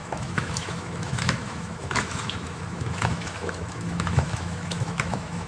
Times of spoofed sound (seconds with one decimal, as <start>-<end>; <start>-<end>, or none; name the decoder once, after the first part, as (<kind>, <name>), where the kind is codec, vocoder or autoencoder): 0.0-5.5 (autoencoder, DAC-VAE)